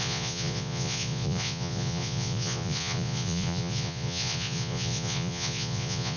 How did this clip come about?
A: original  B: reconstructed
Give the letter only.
B